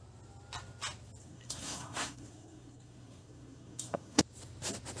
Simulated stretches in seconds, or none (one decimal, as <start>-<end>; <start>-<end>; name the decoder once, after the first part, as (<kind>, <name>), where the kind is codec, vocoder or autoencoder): 1.2-4.2 (codec, SNAC)